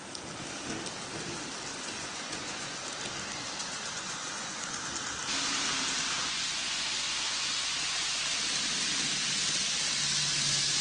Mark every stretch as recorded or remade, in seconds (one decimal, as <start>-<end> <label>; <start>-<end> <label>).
0.0-1.7 recorded; 1.7-2.8 remade; 2.8-3.6 recorded; 3.6-4.8 remade; 4.8-6.2 recorded; 6.2-8.2 remade; 8.2-10.8 recorded